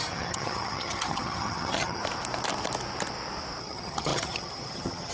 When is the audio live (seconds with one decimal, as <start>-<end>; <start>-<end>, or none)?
2.0-3.6